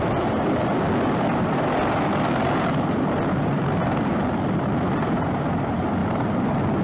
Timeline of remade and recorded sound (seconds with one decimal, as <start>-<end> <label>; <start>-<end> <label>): 0.0-6.8 recorded